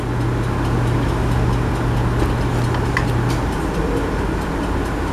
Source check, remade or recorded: recorded